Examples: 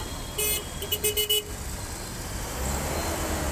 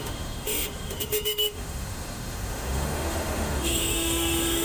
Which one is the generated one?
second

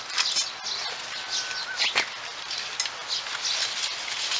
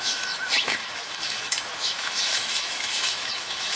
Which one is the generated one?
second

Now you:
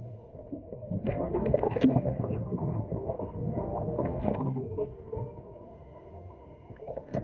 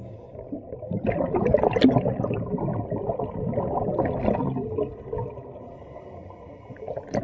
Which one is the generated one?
first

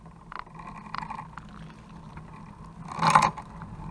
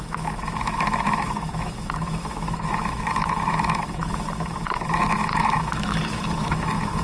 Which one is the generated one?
second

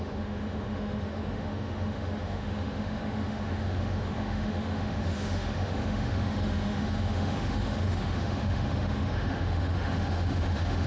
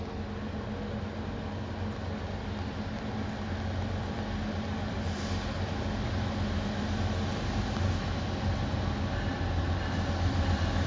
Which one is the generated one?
first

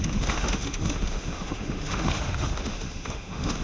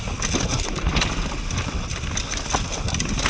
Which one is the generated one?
first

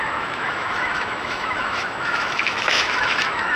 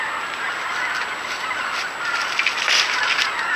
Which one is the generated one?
first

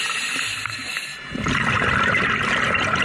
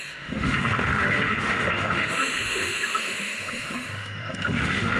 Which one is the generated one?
second